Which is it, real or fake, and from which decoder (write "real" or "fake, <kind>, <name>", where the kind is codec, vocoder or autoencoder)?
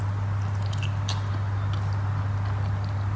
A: real